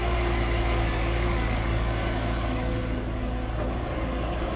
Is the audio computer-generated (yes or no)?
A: yes